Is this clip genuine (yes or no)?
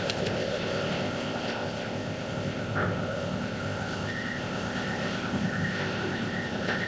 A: no